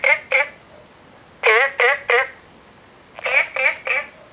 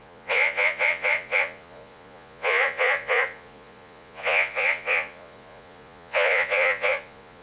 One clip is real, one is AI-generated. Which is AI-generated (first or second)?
second